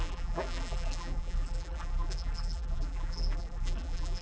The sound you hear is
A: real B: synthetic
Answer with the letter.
B